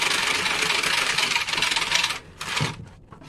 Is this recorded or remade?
recorded